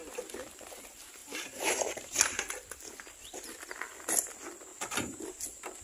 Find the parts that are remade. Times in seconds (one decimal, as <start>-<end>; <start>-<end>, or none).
1.2-2.5; 4.7-5.2